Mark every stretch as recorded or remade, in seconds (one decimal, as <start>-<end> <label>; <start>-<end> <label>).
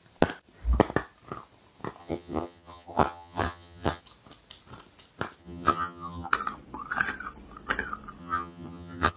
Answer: 0.0-2.0 recorded; 2.0-4.0 remade; 4.0-5.4 recorded; 5.4-6.3 remade; 6.3-8.2 recorded; 8.2-9.2 remade